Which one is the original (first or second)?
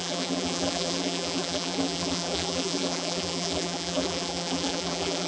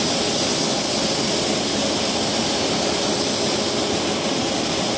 second